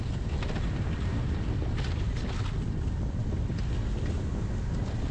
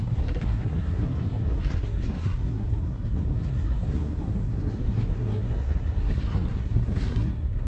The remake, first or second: second